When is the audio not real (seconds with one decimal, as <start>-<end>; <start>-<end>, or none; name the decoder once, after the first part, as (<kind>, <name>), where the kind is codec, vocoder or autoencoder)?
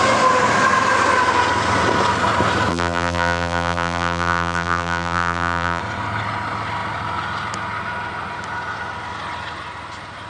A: 2.7-5.8 (vocoder, BigVGAN v2)